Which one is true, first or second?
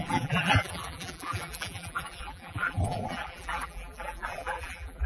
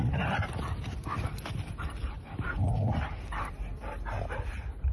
second